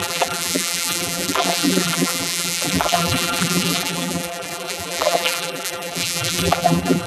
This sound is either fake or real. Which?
fake